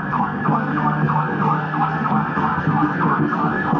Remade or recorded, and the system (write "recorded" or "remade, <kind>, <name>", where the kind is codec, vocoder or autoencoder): remade, codec, SNAC